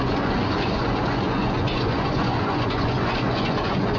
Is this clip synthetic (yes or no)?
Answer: yes